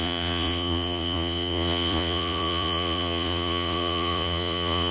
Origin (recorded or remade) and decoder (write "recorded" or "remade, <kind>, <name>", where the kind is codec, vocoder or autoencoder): remade, vocoder, Vocos